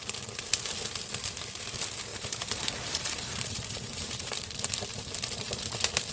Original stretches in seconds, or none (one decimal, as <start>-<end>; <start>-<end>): 0.0-2.1; 4.3-6.1